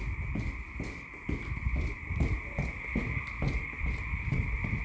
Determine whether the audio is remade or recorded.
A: recorded